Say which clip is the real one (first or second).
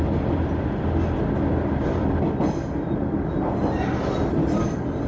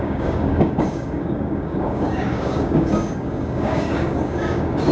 first